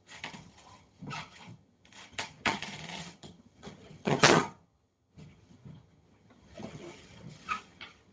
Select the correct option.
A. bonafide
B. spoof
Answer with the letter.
B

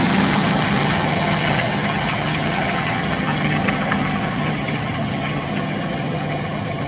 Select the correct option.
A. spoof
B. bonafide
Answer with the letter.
A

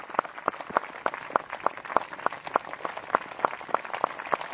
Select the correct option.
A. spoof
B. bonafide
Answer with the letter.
B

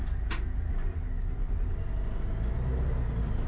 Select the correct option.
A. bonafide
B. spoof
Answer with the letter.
A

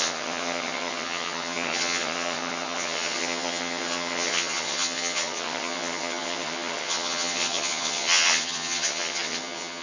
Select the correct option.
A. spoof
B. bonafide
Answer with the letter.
A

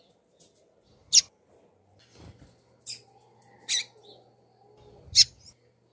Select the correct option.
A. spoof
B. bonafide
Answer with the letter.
B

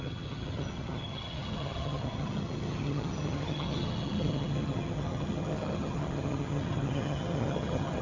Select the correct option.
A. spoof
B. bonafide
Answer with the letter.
A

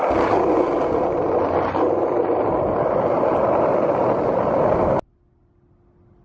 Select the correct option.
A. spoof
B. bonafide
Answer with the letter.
B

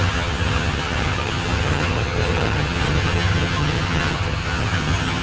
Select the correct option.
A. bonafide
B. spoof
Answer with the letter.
B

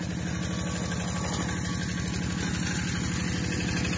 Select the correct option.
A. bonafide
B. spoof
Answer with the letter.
A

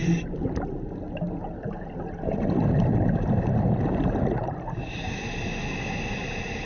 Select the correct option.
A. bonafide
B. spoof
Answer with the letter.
A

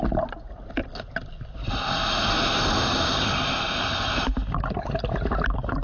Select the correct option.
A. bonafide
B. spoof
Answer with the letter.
A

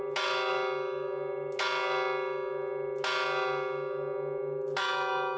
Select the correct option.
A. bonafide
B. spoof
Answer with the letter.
A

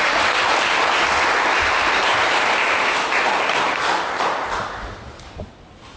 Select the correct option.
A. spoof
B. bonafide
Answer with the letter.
B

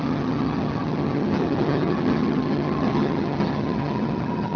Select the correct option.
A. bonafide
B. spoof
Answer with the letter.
B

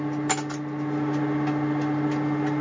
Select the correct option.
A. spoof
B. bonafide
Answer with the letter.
B